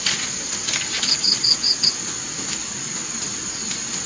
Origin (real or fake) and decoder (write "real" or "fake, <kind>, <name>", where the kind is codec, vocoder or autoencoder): real